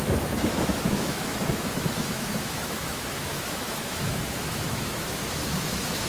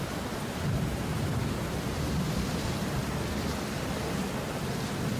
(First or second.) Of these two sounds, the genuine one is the second